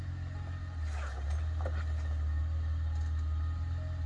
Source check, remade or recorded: recorded